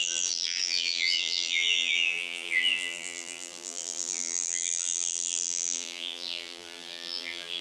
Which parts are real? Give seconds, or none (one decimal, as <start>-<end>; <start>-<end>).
none